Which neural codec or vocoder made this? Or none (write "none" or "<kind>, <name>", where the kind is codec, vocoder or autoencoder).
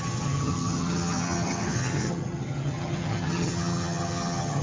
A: vocoder, HiFi-GAN